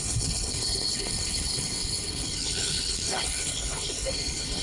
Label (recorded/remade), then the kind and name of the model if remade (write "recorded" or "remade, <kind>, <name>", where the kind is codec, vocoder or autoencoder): remade, codec, HILCodec